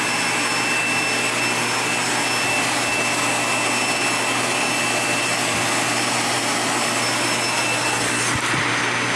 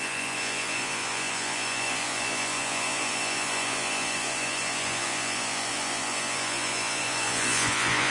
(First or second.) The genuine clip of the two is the first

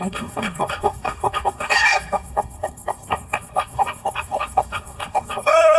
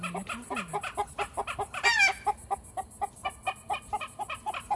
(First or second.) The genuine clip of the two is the second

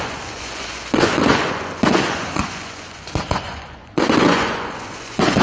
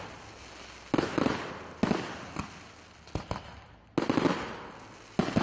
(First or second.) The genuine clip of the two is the second